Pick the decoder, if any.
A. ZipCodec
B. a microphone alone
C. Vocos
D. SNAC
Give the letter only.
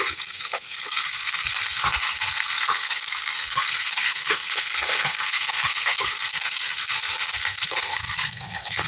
D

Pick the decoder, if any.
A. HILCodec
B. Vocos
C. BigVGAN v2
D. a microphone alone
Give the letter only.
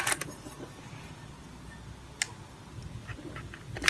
D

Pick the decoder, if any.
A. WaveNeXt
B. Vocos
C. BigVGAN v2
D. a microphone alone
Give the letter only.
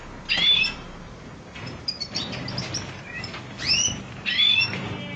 D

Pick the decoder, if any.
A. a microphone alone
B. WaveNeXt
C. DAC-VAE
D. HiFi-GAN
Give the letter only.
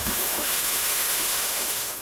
C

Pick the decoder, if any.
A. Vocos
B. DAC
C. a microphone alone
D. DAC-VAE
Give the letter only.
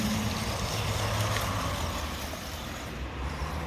C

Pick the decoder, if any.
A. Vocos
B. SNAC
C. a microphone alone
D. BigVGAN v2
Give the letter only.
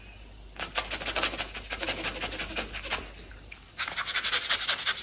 C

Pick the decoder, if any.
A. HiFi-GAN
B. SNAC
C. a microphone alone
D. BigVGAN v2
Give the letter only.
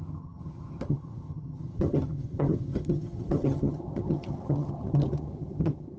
A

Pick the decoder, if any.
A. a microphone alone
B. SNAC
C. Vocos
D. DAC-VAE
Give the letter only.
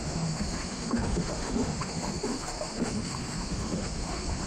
D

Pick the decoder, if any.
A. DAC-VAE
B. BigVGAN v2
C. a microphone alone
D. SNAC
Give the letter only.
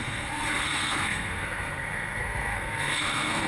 D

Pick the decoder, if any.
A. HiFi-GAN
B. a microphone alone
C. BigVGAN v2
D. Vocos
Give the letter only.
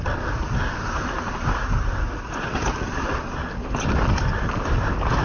B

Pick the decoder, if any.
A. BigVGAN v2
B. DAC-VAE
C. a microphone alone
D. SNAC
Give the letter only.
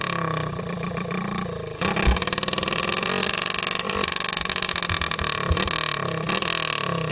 C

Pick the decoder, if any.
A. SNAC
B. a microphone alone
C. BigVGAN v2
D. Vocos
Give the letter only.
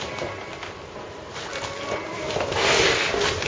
B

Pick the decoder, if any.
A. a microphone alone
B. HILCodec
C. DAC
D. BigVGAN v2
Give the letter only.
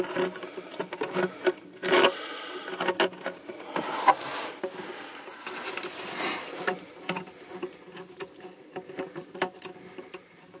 A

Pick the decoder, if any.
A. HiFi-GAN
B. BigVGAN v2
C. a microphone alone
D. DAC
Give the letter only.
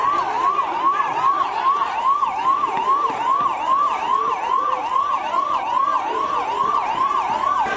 B